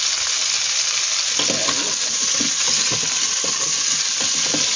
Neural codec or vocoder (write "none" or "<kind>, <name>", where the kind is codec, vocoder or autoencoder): none